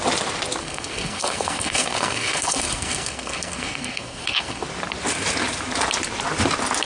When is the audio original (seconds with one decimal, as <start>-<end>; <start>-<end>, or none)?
0.0-0.6; 4.6-6.8